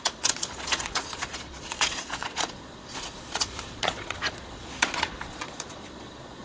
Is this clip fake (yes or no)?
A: yes